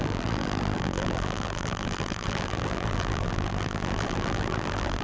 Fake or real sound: fake